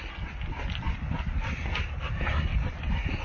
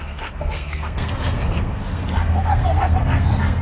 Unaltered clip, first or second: first